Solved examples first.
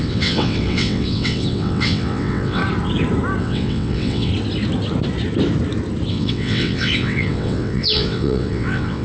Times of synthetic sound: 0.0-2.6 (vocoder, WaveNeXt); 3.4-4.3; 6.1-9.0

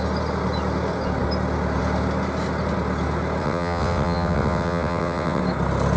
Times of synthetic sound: 3.4-5.4 (vocoder, WaveNeXt)

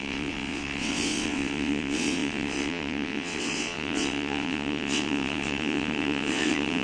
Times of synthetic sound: 0.0-6.8 (vocoder, WaveNeXt)

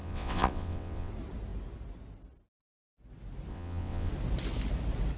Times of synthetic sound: 0.0-1.1 (vocoder, WaveNeXt); 3.5-4.1